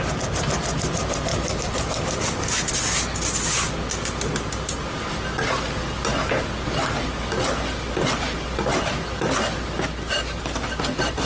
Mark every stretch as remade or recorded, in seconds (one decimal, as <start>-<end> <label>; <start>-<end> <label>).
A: 0.0-1.3 recorded; 1.3-2.7 remade; 2.7-11.3 recorded